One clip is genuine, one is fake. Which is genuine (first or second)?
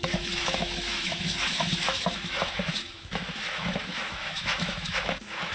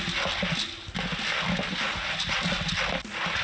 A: second